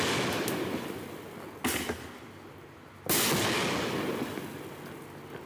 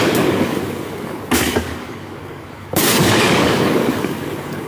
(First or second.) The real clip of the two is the first